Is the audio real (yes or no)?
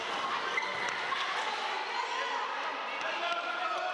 yes